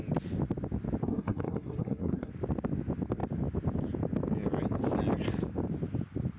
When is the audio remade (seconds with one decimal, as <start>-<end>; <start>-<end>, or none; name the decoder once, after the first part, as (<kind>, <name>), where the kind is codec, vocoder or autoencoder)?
1.0-2.3 (codec, SNAC)